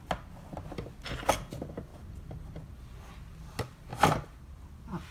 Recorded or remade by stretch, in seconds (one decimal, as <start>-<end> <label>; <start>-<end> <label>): 0.0-1.9 recorded; 1.9-3.1 remade; 3.1-3.9 recorded; 3.9-4.4 remade; 4.4-5.1 recorded